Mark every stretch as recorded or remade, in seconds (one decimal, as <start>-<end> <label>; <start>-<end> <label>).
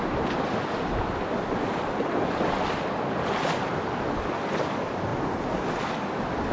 0.0-6.5 recorded